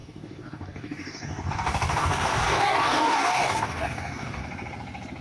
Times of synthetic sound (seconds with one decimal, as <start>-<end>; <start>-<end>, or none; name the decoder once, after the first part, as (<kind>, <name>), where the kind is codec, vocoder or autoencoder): 0.0-4.4 (codec, DAC)